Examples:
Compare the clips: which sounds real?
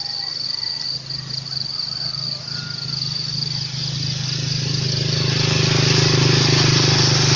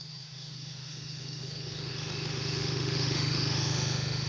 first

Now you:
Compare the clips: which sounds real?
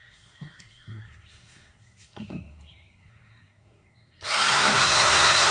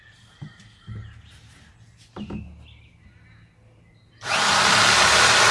second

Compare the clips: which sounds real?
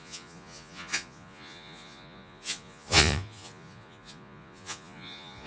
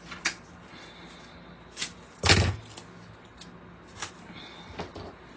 second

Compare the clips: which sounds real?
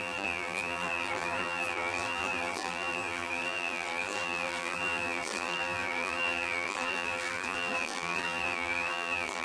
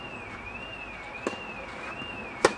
second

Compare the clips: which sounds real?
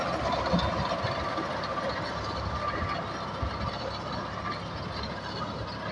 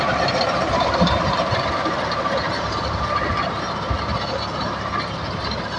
first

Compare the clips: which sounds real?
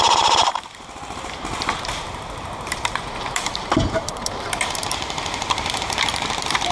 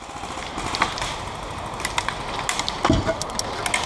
second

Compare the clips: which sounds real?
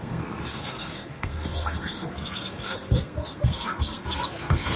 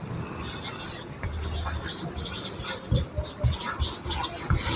second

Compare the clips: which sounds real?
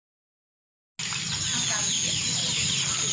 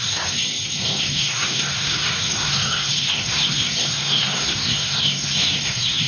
first